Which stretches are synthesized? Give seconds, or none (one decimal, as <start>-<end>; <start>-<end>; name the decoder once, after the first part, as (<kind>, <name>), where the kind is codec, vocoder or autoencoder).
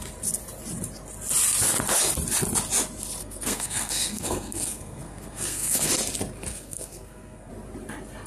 3.2-5.9 (codec, SNAC); 6.5-7.5